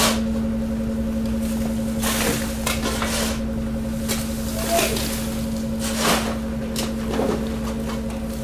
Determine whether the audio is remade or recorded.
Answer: recorded